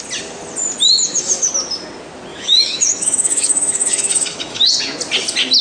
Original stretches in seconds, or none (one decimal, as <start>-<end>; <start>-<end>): 0.0-1.0; 1.5-2.3; 4.6-5.6